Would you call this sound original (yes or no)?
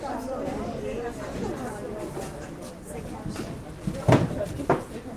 no